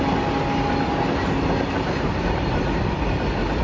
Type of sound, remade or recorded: recorded